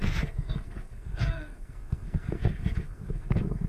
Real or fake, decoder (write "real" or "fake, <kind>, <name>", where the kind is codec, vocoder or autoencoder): fake, codec, SNAC